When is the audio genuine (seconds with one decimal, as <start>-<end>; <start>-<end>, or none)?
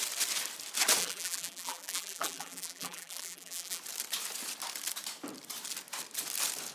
0.0-1.0; 3.8-6.7